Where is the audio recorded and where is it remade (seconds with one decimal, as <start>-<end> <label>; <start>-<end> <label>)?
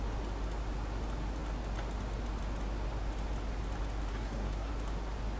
0.0-4.1 recorded; 4.1-4.7 remade; 4.7-5.4 recorded